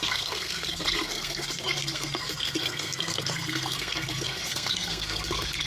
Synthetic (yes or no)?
yes